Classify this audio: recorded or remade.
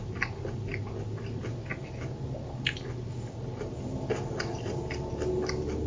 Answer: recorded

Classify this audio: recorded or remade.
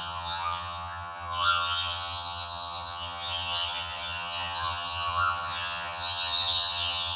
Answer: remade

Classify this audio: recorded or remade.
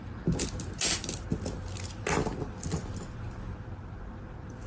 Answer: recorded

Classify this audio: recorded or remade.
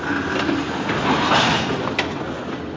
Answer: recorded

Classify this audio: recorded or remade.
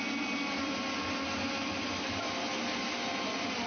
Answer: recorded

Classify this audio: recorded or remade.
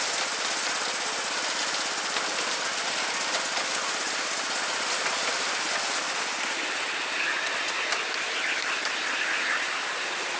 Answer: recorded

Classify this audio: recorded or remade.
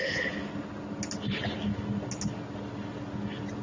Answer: recorded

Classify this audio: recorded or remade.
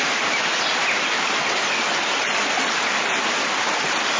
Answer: recorded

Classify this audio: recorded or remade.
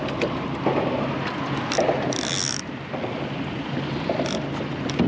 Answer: recorded